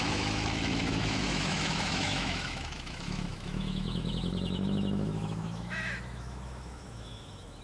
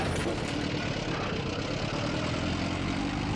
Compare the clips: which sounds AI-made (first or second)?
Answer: first